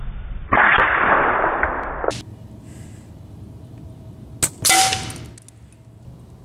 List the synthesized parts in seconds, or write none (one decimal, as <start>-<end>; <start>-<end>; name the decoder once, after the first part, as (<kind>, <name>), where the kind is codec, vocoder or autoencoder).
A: 0.7-1.7 (vocoder, BigVGAN v2)